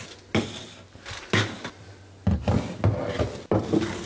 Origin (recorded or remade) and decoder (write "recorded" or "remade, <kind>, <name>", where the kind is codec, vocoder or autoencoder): recorded